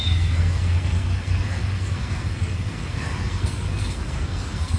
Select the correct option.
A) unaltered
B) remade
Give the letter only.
B